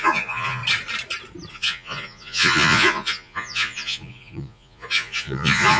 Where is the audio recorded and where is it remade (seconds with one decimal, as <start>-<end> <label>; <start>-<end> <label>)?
0.0-0.6 remade; 0.6-1.5 recorded; 1.5-5.8 remade